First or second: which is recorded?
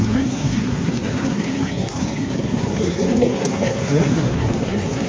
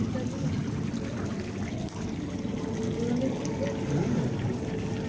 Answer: second